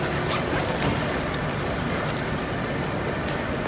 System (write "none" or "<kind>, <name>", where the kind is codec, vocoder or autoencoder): none